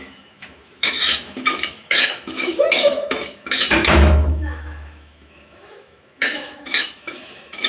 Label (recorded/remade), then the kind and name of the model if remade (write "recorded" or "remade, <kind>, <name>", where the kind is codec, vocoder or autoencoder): remade, autoencoder, DAC-VAE